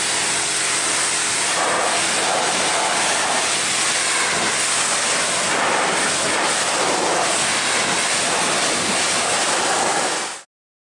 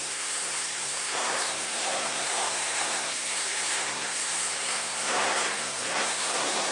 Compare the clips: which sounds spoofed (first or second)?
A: second